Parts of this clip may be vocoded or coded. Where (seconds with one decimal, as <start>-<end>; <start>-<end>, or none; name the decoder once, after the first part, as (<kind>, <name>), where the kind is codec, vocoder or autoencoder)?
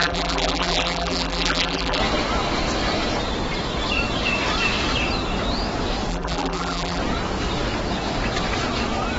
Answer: 0.0-2.0 (vocoder, BigVGAN v2); 6.1-7.0